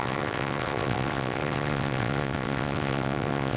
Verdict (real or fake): fake